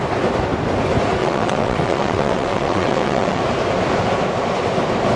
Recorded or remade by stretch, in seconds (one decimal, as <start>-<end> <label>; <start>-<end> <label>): 0.0-1.2 recorded; 1.2-3.4 remade; 3.4-5.2 recorded